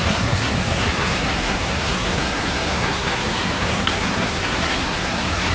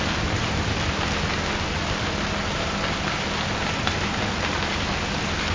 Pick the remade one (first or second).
first